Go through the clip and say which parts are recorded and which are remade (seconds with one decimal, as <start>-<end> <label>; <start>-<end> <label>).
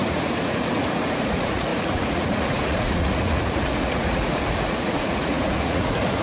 0.0-6.2 remade